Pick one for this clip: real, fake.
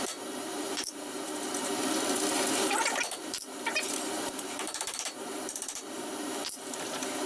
fake